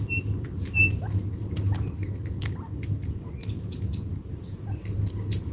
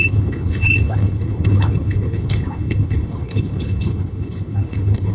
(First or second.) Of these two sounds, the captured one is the first